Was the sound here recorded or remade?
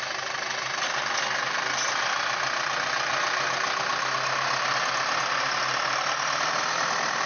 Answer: recorded